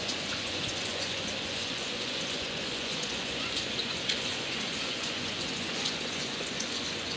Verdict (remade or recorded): remade